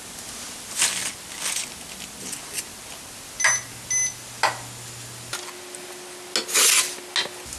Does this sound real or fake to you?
real